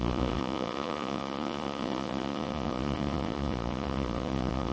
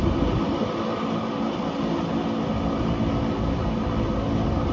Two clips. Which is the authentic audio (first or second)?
second